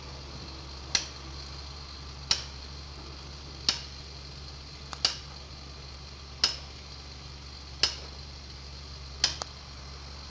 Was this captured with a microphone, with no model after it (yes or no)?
yes